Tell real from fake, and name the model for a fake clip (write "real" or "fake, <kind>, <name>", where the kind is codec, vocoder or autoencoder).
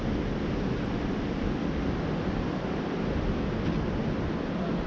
real